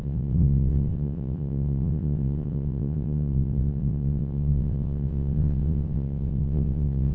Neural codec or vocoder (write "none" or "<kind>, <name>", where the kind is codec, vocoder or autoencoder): vocoder, WaveNeXt